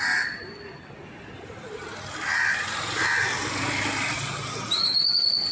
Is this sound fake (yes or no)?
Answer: no